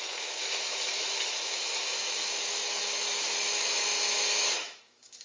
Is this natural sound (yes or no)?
no